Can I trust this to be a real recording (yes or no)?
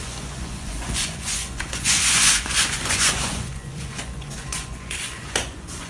no